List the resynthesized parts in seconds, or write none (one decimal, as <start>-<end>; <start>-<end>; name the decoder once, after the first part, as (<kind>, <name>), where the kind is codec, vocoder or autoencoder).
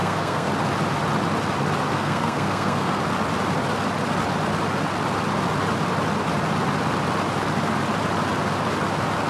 0.0-0.5 (codec, SNAC); 1.9-3.0